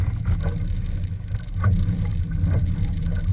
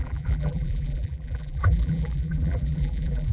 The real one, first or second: first